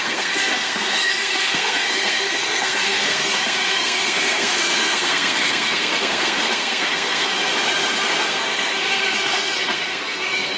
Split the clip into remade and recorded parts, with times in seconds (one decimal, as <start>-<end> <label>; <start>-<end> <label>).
0.0-7.5 remade; 7.5-8.2 recorded; 8.2-10.6 remade